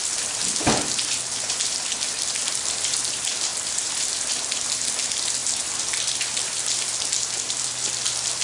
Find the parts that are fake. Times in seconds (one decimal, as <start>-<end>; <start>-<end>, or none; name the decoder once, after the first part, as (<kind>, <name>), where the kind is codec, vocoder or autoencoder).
3.5-4.7 (vocoder, BigVGAN v2); 5.4-6.6